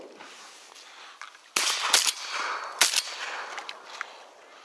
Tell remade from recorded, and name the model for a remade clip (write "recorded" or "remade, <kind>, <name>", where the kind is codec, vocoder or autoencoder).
recorded